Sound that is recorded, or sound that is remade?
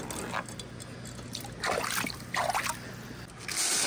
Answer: recorded